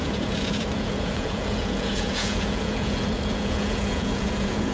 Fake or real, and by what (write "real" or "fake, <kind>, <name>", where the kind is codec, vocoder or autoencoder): fake, vocoder, Vocos